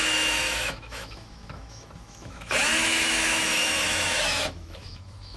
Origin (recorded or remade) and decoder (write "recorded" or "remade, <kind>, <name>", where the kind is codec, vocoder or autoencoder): remade, autoencoder, DAC-VAE